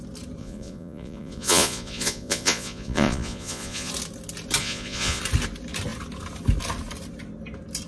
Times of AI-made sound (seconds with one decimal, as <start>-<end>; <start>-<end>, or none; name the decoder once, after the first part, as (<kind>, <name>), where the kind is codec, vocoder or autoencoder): 0.4-3.9 (vocoder, Vocos); 4.6-5.2